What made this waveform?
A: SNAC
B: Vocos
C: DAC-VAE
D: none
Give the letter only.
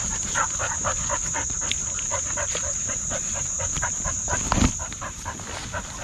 D